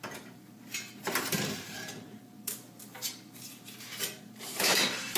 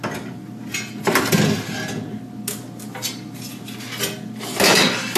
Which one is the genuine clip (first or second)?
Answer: second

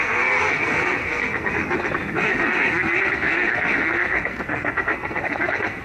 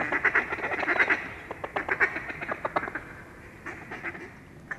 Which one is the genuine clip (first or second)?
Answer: second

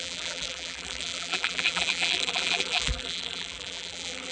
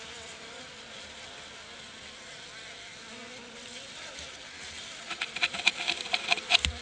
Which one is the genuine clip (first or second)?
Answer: second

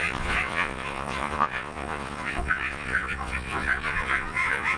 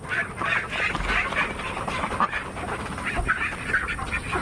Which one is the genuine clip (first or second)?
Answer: second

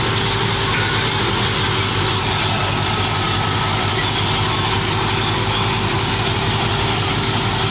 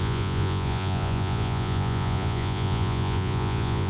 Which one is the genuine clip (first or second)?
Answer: first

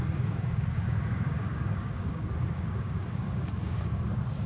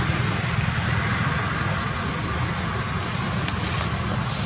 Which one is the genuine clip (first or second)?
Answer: second